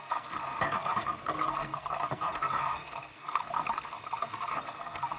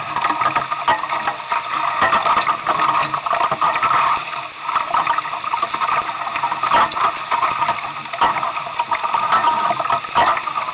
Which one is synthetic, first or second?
first